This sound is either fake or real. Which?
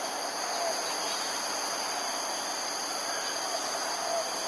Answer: real